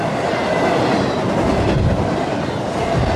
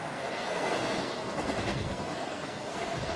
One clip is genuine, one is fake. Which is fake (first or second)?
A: second